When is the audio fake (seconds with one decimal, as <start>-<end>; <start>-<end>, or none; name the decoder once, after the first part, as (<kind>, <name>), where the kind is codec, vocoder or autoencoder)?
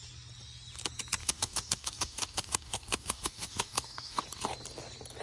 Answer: 1.2-4.2 (codec, DAC)